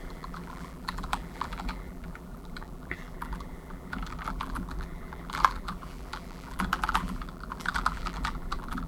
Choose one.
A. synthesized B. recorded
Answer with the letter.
A